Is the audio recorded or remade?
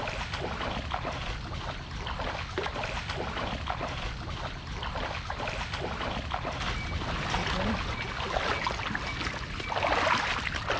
recorded